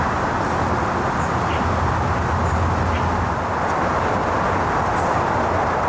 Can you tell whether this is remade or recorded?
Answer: recorded